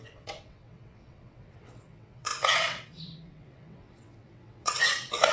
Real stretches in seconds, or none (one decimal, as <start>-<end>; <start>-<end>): none